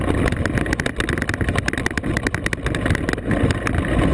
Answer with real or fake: real